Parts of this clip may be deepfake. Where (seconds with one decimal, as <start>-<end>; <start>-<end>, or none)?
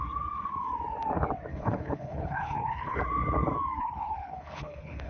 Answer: 1.5-3.0; 3.8-5.1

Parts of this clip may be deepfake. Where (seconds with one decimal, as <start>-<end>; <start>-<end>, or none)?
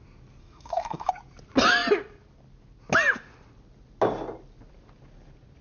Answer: 0.4-1.1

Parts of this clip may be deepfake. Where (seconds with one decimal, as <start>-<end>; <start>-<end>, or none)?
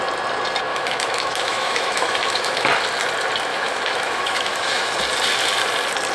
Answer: 0.7-2.7; 3.5-4.9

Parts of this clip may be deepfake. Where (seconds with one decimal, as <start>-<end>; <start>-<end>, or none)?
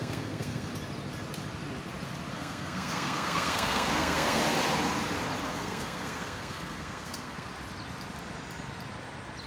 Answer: 0.0-0.7; 2.3-4.4; 5.5-7.5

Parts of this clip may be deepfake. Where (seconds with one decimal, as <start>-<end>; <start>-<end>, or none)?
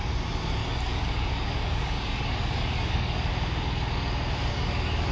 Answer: 0.6-3.3; 4.5-5.1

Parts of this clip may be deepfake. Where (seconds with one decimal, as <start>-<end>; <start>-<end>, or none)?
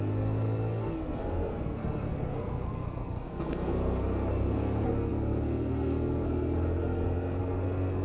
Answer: 0.0-8.0